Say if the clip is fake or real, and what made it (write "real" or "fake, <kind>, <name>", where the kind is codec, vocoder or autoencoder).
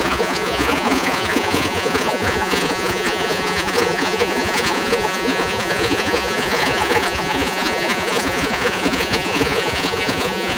fake, vocoder, Vocos